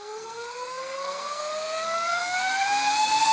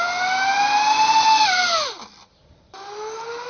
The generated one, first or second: first